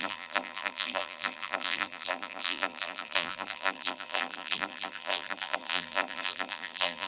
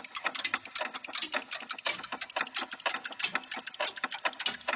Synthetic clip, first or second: first